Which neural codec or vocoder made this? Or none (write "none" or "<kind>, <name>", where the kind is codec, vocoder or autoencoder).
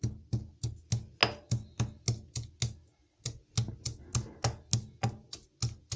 none